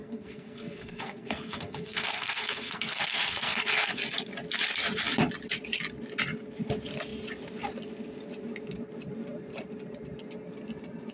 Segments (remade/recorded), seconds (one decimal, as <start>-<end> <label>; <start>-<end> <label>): 0.0-4.0 remade; 4.0-11.1 recorded